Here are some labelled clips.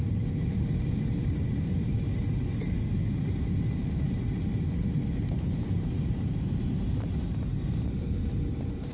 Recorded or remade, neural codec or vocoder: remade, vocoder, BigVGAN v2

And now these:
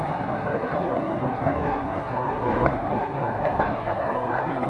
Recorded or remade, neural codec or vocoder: remade, codec, SNAC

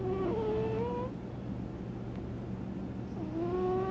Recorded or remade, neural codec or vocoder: recorded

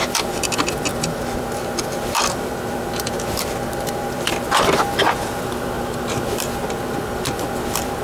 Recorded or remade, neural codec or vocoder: remade, vocoder, BigVGAN v2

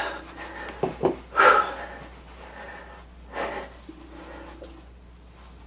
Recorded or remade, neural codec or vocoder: recorded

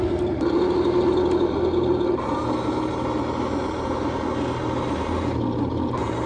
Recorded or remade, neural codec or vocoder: recorded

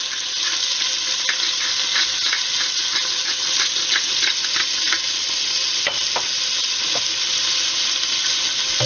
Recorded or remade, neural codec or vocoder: recorded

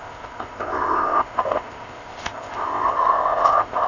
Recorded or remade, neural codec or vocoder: remade, codec, ZipCodec